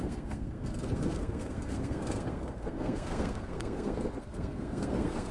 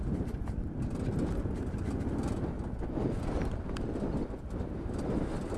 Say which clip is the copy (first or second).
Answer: first